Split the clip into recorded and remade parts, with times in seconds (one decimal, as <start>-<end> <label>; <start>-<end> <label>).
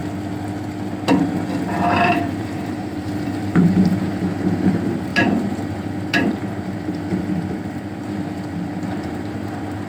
0.0-1.7 recorded; 1.7-9.9 remade